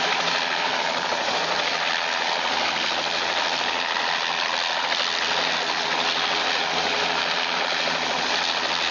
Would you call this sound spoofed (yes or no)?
no